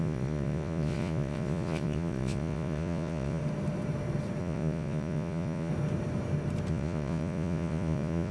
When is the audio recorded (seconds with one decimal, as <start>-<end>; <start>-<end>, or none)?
3.4-4.4; 5.7-6.7